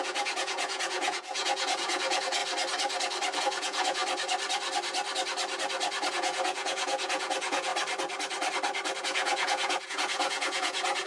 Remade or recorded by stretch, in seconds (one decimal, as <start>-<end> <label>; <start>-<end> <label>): 0.0-2.4 remade; 2.4-3.4 recorded; 3.4-4.0 remade; 4.0-6.1 recorded; 6.1-7.7 remade; 7.7-9.0 recorded; 9.0-11.1 remade